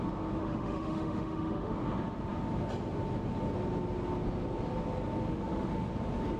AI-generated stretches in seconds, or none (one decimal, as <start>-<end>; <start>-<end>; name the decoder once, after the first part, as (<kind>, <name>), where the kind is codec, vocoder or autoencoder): 0.4-1.7 (autoencoder, DAC-VAE); 5.3-5.9